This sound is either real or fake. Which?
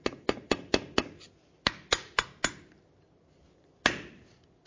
real